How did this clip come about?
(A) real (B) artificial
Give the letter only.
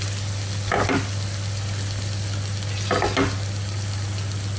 A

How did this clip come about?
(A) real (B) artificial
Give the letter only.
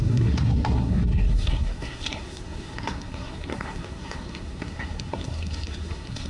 B